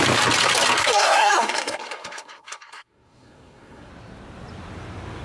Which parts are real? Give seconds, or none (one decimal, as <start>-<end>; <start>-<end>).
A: 0.0-0.8; 3.9-5.2